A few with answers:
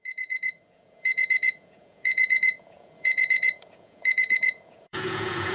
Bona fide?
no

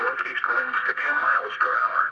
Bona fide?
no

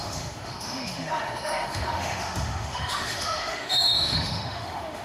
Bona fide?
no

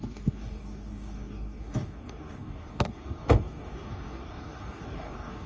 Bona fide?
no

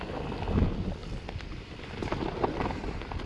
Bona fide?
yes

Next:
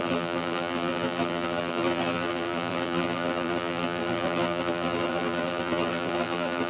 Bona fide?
no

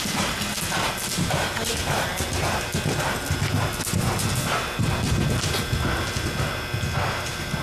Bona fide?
yes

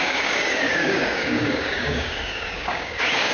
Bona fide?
no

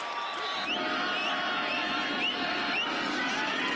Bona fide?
yes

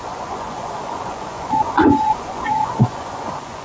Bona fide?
no